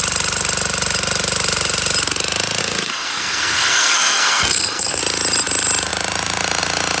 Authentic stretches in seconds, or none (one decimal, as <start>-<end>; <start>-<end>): 0.0-2.6; 5.0-7.0